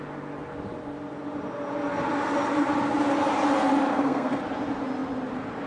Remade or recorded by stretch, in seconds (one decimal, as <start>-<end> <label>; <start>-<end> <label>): 0.0-3.9 recorded; 3.9-4.4 remade; 4.4-5.7 recorded